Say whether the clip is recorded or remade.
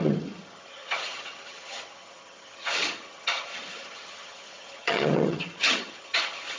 remade